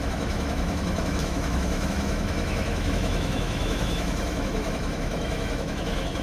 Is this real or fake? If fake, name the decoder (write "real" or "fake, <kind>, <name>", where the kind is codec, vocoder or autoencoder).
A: fake, autoencoder, DAC-VAE